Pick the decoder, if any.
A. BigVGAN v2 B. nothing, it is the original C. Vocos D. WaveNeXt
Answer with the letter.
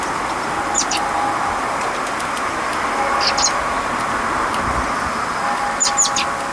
B